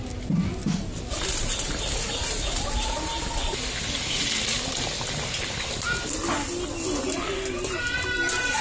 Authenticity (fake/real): real